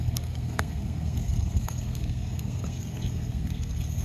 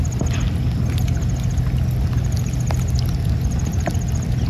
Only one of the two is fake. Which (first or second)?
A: first